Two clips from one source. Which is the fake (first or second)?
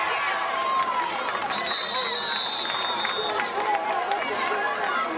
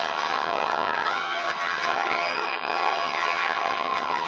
second